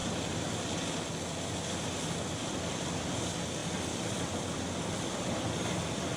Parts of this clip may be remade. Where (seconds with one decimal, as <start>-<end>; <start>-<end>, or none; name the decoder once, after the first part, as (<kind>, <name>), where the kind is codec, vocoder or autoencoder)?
none